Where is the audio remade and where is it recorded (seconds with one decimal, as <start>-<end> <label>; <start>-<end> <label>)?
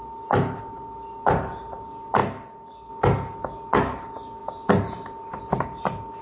0.0-6.2 recorded